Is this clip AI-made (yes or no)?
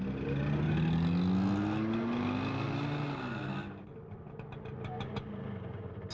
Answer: no